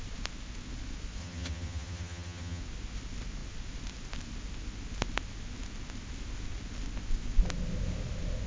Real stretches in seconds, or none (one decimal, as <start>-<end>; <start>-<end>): 0.0-1.2; 2.6-8.5